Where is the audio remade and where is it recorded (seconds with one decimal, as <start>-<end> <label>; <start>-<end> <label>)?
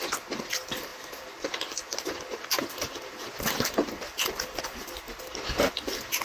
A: 0.0-6.2 recorded